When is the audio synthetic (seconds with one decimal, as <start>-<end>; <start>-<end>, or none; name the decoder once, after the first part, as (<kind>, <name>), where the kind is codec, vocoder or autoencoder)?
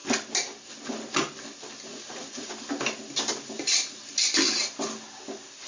1.9-2.5 (vocoder, Vocos)